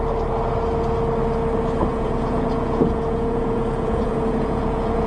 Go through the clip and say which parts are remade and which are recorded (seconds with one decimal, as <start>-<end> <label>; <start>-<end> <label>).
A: 0.0-1.9 recorded; 1.9-5.1 remade